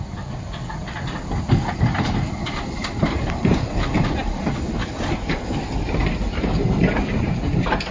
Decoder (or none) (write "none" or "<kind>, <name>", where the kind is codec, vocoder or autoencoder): none